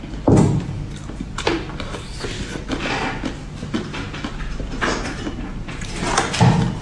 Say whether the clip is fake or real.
real